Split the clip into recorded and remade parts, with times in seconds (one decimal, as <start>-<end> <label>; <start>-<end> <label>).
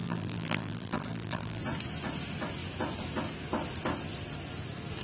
0.0-1.6 remade; 1.6-5.0 recorded